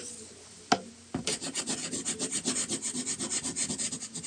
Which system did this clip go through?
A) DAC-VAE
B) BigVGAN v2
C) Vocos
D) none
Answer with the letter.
D